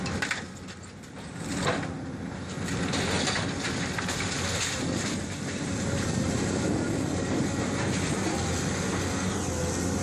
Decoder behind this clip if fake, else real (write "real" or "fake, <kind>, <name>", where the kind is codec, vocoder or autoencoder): real